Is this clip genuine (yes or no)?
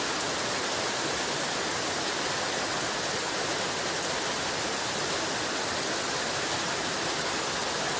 yes